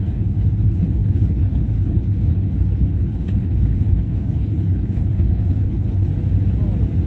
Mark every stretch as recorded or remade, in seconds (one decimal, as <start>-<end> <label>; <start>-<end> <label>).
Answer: 0.0-6.1 remade; 6.1-7.1 recorded